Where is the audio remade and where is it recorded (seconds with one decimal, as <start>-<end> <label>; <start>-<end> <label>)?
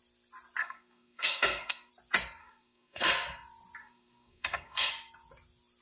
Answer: 0.0-0.6 recorded; 0.6-1.9 remade; 1.9-2.4 recorded; 2.4-3.1 remade; 3.1-3.8 recorded; 3.8-4.9 remade; 4.9-5.8 recorded